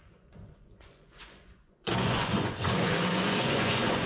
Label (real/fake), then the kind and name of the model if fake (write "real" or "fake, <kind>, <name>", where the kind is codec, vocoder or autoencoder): fake, vocoder, Vocos